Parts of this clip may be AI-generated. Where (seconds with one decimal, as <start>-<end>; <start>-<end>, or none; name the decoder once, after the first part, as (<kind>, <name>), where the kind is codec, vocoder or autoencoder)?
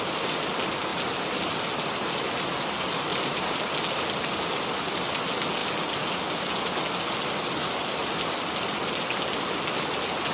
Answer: 3.1-3.6 (vocoder, BigVGAN v2)